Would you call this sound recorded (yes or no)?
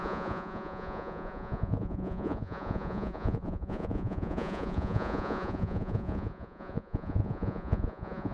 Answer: no